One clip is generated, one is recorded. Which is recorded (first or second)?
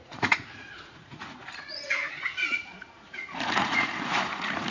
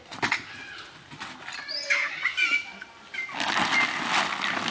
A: second